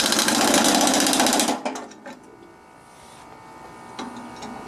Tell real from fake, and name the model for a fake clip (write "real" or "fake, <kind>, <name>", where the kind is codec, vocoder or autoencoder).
real